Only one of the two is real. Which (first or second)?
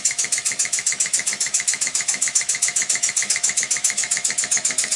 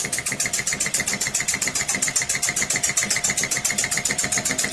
second